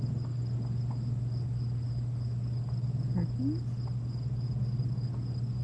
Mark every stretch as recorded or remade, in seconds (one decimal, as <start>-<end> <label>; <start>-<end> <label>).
0.0-5.6 recorded